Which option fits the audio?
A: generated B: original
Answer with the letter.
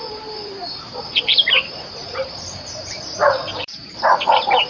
A